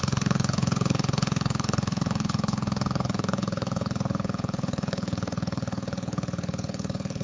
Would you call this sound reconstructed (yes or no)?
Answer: yes